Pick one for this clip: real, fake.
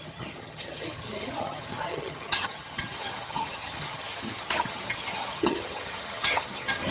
fake